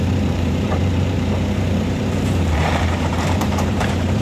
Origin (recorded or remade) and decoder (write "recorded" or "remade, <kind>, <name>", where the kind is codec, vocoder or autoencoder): remade, vocoder, BigVGAN v2